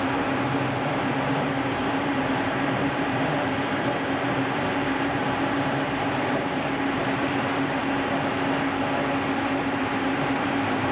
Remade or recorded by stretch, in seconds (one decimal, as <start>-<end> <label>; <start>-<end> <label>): 0.0-7.8 remade; 7.8-9.6 recorded; 9.6-10.9 remade